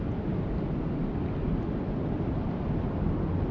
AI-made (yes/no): no